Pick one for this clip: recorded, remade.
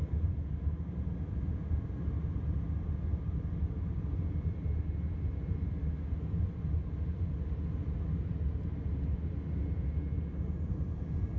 recorded